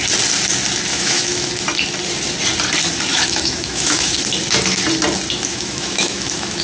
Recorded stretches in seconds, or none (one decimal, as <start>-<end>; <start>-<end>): 0.0-0.9; 1.5-3.1; 4.2-5.5